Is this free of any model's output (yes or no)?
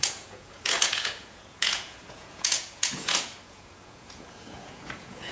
no